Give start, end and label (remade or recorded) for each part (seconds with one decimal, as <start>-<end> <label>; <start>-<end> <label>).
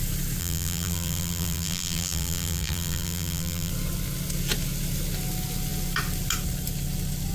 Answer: 0.0-0.4 recorded; 0.4-3.7 remade; 3.7-7.3 recorded